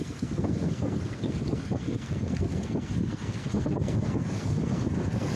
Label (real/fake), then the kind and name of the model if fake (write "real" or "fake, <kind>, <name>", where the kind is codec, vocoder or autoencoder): fake, codec, SNAC